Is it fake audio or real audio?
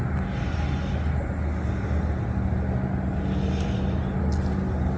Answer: real